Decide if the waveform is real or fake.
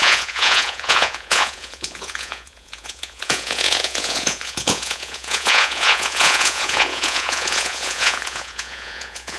fake